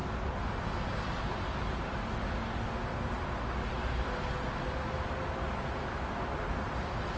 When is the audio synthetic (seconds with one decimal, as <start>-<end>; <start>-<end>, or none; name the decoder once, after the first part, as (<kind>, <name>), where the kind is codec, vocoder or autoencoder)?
none

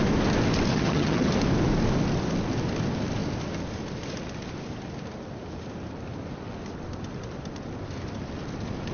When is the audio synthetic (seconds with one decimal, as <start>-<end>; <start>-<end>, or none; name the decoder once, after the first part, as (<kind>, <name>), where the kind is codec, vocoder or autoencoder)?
0.7-1.3 (vocoder, HiFi-GAN)

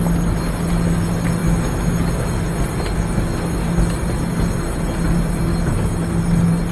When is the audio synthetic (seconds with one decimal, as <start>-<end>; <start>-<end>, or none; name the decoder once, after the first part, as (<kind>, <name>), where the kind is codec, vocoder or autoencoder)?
none

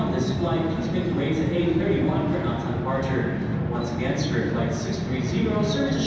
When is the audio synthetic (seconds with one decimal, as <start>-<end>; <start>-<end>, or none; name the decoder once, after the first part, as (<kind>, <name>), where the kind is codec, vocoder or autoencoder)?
none

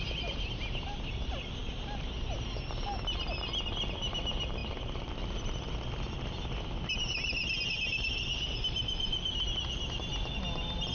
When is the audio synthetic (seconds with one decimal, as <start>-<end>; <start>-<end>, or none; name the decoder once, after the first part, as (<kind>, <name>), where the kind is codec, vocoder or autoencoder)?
none

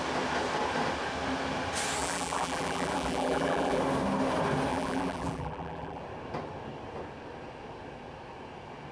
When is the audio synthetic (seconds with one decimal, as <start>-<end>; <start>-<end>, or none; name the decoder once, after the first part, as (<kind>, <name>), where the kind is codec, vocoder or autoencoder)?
2.0-3.8 (vocoder, BigVGAN v2); 4.7-6.0

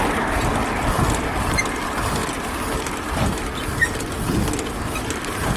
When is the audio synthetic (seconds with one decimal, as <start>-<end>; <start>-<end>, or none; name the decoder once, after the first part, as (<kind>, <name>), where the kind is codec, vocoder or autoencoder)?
none

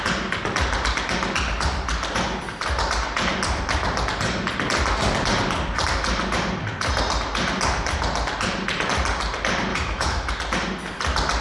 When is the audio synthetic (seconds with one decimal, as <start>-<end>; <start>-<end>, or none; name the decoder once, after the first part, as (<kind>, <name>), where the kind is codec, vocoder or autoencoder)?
9.7-10.3 (autoencoder, DAC-VAE)